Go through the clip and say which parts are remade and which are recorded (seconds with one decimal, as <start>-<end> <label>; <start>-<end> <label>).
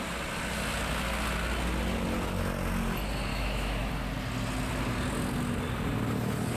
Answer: 0.0-3.3 recorded; 3.3-3.9 remade; 3.9-6.6 recorded